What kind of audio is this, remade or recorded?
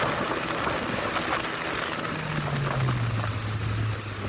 recorded